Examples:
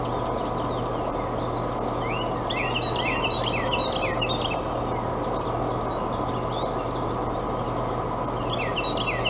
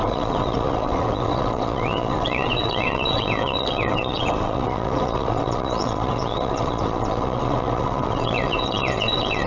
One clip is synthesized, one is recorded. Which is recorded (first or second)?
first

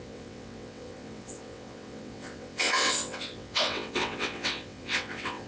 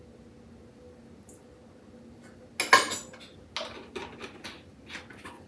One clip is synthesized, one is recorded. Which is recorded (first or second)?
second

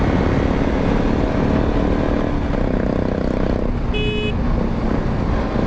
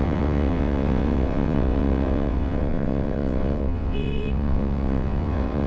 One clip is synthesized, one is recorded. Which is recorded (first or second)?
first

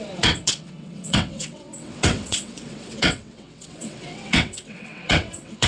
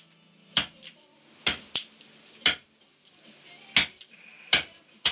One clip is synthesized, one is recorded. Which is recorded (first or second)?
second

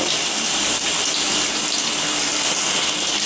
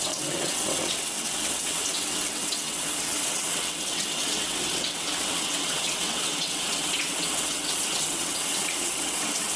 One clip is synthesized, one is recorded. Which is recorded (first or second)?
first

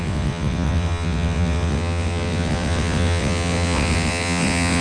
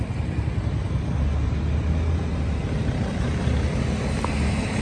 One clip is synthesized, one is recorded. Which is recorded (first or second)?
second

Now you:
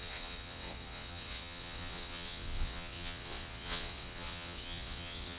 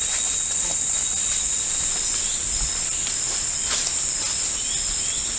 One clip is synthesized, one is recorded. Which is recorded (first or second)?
second